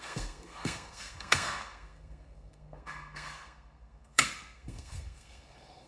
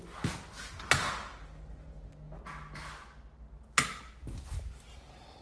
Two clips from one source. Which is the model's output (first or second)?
first